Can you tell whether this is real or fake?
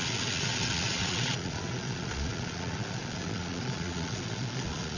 fake